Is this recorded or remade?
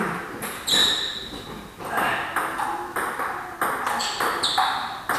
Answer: recorded